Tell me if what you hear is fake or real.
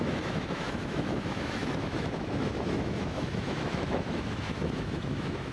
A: fake